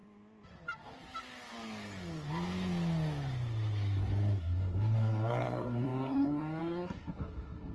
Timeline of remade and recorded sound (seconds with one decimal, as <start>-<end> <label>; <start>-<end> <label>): 0.0-4.4 recorded; 4.4-7.7 remade